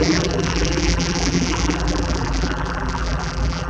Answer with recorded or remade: remade